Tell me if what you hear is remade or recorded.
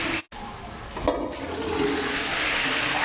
recorded